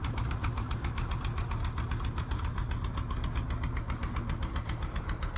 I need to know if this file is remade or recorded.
recorded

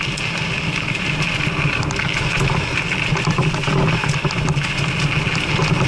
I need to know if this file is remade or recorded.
recorded